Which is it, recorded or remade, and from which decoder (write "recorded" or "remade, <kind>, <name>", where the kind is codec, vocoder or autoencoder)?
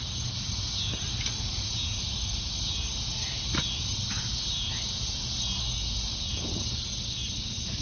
recorded